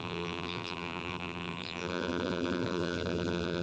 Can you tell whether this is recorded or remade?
remade